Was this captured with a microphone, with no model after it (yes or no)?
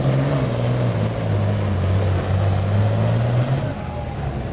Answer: yes